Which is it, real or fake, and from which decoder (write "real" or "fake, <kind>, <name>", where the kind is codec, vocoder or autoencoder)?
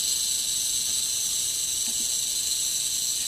real